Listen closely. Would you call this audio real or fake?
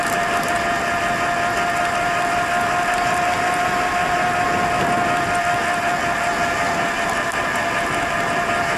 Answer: real